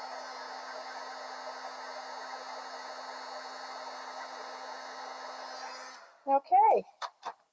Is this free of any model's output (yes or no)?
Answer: yes